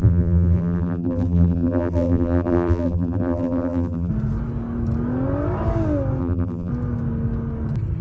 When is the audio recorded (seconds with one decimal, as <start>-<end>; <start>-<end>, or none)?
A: 4.1-6.2; 6.7-8.0